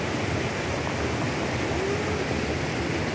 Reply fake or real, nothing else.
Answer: real